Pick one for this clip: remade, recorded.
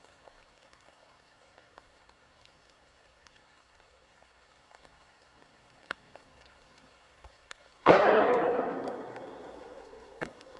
remade